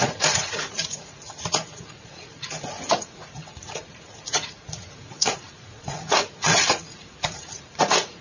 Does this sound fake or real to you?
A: fake